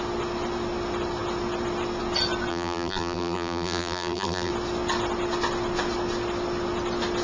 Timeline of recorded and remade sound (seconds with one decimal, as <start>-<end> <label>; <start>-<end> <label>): 0.0-2.5 recorded; 2.5-4.5 remade; 4.5-7.2 recorded